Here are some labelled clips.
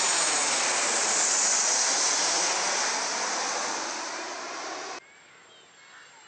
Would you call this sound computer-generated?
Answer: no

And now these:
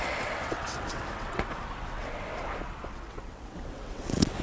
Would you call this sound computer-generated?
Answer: yes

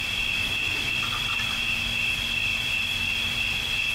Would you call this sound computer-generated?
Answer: no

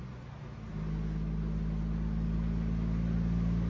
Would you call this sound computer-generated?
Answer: no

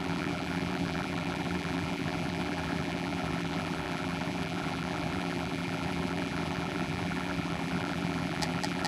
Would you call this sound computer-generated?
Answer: yes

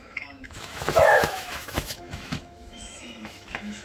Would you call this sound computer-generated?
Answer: yes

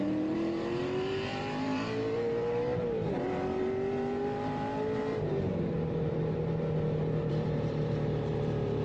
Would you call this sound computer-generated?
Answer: yes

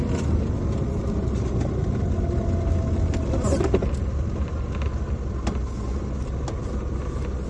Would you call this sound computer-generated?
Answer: no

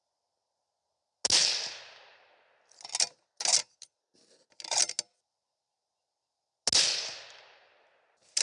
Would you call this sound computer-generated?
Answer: no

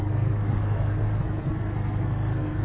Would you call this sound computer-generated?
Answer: yes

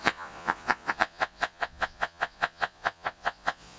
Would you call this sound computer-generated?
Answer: yes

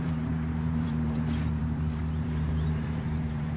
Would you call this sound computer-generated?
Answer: yes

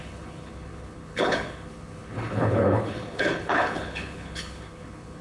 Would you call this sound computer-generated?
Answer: yes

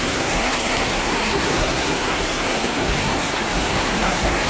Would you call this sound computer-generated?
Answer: yes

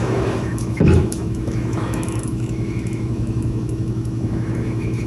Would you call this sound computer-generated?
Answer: yes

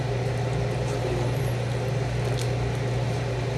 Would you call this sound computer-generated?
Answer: no